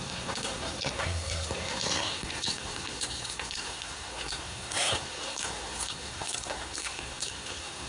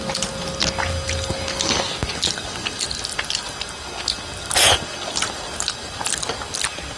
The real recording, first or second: second